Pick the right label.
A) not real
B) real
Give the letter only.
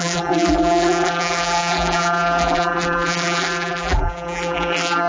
A